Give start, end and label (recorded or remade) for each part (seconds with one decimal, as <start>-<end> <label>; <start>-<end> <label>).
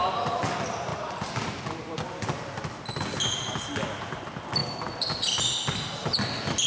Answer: 0.0-6.7 recorded